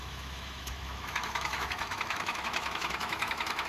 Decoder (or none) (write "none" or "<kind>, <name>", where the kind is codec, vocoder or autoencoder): autoencoder, DAC-VAE